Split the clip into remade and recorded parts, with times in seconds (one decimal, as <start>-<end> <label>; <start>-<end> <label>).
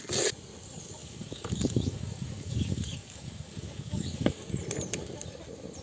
0.0-1.0 recorded; 1.0-4.5 remade; 4.5-5.8 recorded